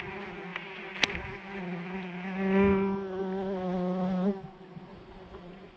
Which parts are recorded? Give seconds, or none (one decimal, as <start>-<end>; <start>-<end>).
0.0-4.9